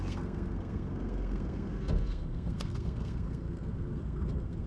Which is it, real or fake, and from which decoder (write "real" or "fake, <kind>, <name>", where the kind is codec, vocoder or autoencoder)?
fake, codec, SNAC